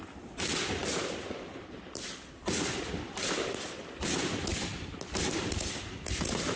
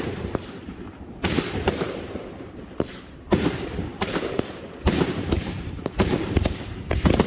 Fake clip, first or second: second